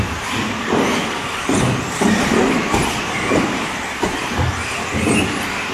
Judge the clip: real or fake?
real